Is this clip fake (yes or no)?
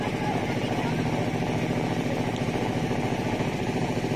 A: no